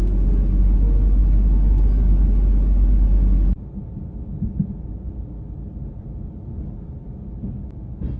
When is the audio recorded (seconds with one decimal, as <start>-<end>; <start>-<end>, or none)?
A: 0.0-8.2